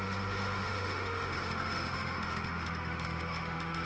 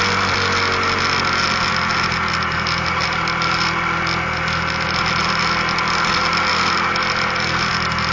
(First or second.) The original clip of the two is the second